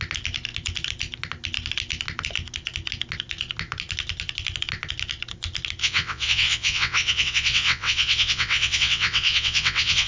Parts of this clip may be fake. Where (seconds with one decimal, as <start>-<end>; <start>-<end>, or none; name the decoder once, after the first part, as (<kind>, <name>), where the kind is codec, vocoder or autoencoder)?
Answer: 5.8-10.1 (vocoder, WaveNeXt)